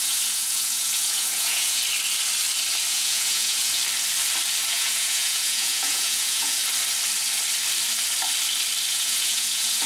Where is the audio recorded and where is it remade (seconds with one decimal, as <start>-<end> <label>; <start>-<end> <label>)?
0.0-1.8 remade; 1.8-2.9 recorded; 2.9-3.8 remade; 3.8-4.7 recorded; 4.7-6.6 remade; 6.6-8.9 recorded; 8.9-9.9 remade